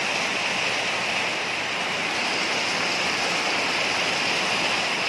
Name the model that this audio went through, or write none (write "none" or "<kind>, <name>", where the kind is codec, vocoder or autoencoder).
none